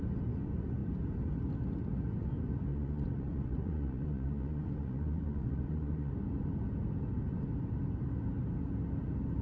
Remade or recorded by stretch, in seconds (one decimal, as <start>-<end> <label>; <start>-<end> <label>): 0.0-2.7 recorded; 2.7-6.1 remade; 6.1-9.4 recorded